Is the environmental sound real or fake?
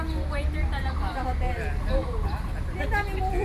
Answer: real